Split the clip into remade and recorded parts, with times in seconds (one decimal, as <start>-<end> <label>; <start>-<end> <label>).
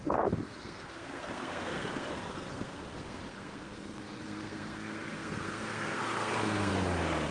0.0-6.7 remade; 6.7-7.3 recorded